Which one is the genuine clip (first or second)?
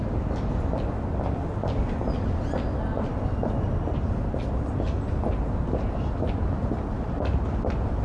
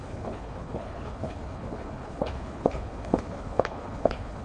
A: first